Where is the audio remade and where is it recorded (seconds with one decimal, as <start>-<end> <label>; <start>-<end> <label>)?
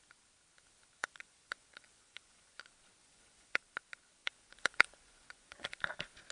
0.0-1.0 recorded; 1.0-2.6 remade; 2.6-3.0 recorded; 3.0-3.6 remade; 3.6-4.2 recorded; 4.2-5.8 remade; 5.8-6.3 recorded